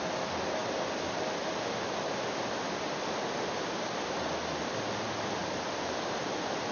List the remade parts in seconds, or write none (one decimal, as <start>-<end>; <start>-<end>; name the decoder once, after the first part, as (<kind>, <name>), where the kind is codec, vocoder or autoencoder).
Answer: 5.4-6.3 (vocoder, BigVGAN v2)